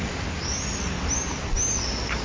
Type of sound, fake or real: real